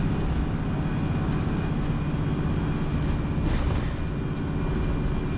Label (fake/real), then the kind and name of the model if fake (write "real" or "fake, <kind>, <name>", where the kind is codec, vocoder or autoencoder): real